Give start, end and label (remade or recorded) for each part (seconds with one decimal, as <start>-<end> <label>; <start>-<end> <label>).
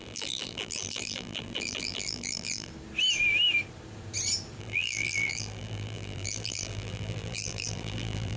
0.0-2.7 remade; 2.7-4.6 recorded; 4.6-8.4 remade